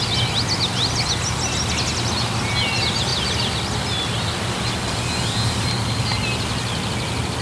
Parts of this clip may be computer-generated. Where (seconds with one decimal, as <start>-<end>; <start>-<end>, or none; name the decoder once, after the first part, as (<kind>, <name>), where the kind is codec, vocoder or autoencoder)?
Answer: none